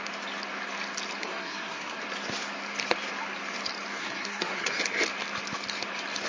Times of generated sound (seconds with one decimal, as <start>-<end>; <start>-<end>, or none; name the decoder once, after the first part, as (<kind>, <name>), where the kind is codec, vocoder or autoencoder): 1.2-2.0 (codec, SNAC); 4.0-4.8